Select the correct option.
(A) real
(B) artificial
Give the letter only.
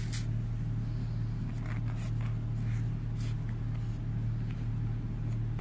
A